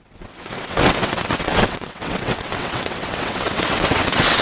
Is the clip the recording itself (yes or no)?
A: no